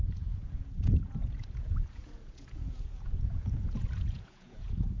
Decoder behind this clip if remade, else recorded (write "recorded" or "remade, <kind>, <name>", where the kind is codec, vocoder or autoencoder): remade, vocoder, Vocos